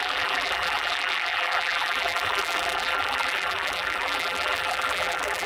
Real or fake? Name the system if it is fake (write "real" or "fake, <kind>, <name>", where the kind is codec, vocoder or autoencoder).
fake, vocoder, BigVGAN v2